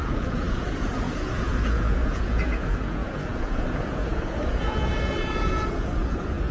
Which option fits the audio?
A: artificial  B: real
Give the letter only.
A